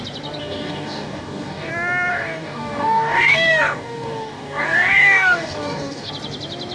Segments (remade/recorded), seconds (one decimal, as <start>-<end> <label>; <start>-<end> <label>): 0.0-0.4 recorded; 0.4-1.7 remade; 1.7-2.1 recorded; 2.1-6.1 remade; 6.1-6.7 recorded